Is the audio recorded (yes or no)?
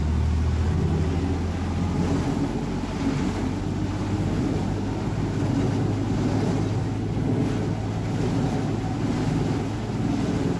yes